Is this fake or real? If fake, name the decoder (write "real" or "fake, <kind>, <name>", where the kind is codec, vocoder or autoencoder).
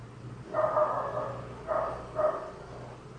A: real